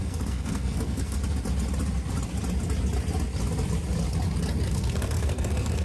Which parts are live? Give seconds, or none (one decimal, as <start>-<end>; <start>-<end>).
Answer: 1.2-4.7